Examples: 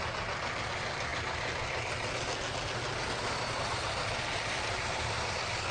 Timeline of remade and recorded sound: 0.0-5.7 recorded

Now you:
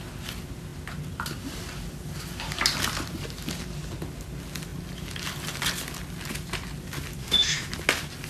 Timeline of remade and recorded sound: 0.0-7.2 recorded; 7.2-7.7 remade; 7.7-8.3 recorded

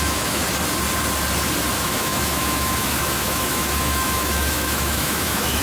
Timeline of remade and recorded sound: 0.0-0.4 remade; 0.4-1.7 recorded; 1.7-5.6 remade

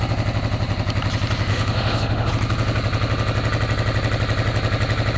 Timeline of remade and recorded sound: 0.0-1.5 recorded; 1.5-2.3 remade; 2.3-5.2 recorded

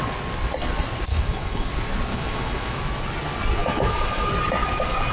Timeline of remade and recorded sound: 0.0-1.1 recorded; 1.1-1.7 remade; 1.7-2.1 recorded; 2.1-2.8 remade; 2.8-3.6 recorded; 3.6-4.3 remade; 4.3-5.1 recorded

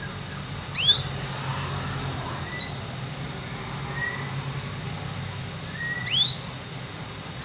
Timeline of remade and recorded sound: 0.0-7.4 recorded